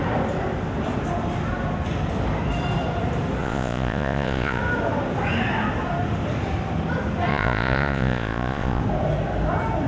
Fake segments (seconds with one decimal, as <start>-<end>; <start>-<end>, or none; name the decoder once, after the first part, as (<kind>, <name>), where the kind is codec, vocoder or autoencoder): 3.4-4.6 (vocoder, Vocos); 7.3-8.8

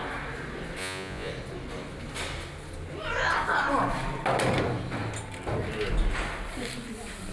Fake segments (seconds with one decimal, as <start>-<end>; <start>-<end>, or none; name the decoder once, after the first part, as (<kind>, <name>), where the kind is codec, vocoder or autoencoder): 0.8-1.3 (vocoder, Vocos)

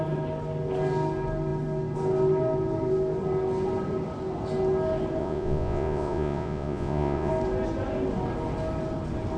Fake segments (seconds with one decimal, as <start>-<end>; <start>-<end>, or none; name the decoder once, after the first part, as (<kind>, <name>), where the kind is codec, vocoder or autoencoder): 5.2-7.3 (vocoder, Vocos)

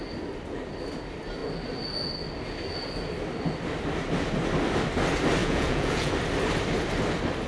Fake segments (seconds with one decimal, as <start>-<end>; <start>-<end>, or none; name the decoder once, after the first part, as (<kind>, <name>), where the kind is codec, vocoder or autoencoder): 5.4-6.1 (vocoder, Vocos)

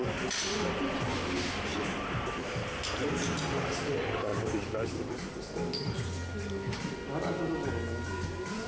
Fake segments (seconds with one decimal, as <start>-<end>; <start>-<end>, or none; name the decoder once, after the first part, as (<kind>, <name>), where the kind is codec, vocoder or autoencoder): none

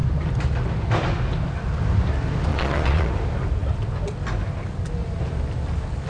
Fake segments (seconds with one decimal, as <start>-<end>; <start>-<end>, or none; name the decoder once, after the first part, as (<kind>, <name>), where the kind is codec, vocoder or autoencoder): 2.5-3.1 (vocoder, Vocos)

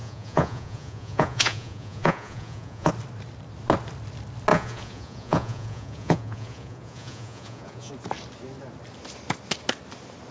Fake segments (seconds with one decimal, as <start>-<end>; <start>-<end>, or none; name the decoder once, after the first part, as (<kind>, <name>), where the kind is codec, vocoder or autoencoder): 0.0-2.9 (vocoder, Vocos); 4.5-7.9

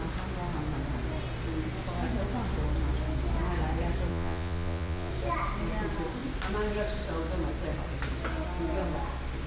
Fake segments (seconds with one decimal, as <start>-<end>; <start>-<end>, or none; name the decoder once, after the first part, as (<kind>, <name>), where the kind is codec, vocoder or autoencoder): 4.1-5.1 (vocoder, Vocos)